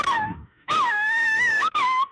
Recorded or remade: remade